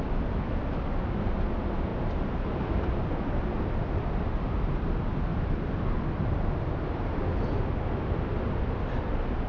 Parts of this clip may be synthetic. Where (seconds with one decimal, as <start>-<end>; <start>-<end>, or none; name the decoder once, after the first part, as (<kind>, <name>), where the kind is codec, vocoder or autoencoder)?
none